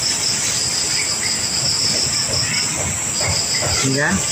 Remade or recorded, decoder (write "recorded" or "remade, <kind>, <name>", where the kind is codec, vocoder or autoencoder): recorded